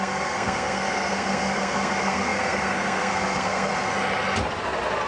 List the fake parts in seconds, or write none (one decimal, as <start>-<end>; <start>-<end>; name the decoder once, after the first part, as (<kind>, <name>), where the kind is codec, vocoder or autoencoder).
0.0-3.7 (codec, SNAC)